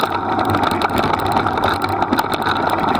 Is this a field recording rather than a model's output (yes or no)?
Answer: yes